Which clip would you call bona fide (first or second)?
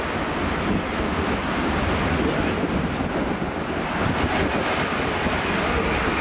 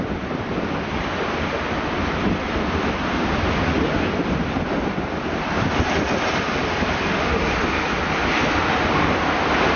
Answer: first